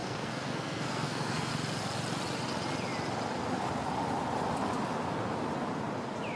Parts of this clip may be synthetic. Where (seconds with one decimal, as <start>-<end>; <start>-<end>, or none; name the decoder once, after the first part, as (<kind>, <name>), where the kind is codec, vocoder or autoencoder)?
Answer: 0.0-1.5 (codec, SNAC)